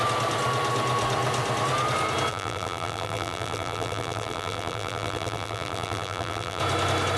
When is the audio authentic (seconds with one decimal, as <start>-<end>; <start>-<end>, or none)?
0.0-2.3; 6.6-7.2